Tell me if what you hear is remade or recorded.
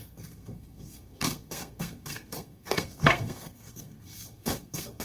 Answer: remade